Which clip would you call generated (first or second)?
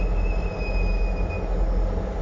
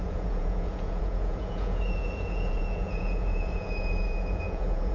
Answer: second